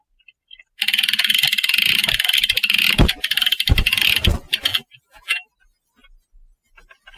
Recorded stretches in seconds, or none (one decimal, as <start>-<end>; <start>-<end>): 0.0-4.7; 5.6-7.2

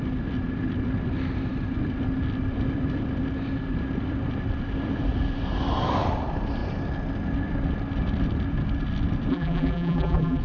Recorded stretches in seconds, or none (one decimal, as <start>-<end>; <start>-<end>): 0.0-9.3

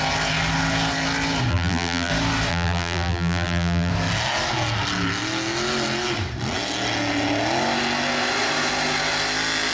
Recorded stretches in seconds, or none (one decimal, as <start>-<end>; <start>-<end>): 0.0-1.5; 2.1-2.5; 3.9-9.7

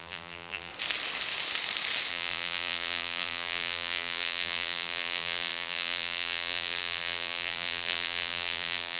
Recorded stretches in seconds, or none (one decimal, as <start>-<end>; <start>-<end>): 0.7-2.1

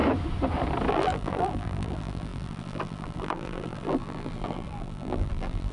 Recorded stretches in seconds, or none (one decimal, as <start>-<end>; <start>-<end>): 0.0-0.9

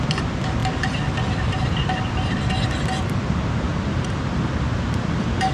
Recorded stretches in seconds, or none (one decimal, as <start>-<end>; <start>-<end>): 0.0-5.5